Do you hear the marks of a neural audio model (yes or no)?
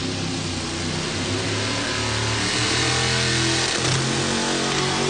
no